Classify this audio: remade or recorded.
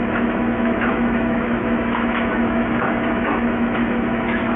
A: remade